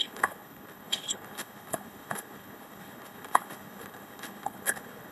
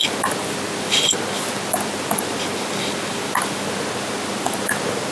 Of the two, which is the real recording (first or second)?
second